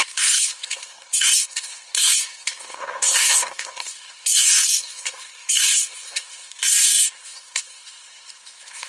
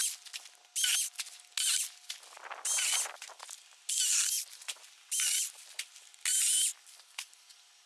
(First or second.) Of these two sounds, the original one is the second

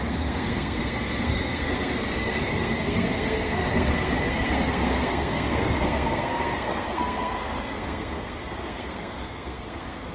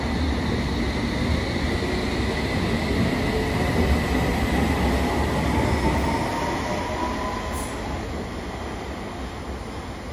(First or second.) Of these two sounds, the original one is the second